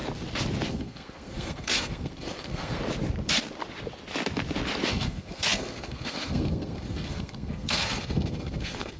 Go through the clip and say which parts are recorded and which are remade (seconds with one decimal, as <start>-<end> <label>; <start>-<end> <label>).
0.0-0.7 recorded; 0.7-2.8 remade; 2.8-4.9 recorded; 4.9-9.0 remade